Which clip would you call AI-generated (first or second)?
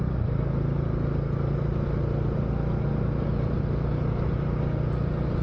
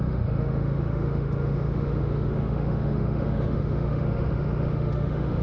second